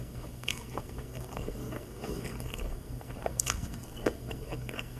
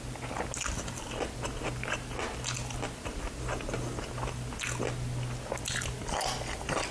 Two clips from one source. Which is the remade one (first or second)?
first